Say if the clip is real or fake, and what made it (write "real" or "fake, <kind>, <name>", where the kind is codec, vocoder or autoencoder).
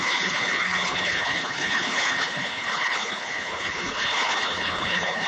fake, codec, HILCodec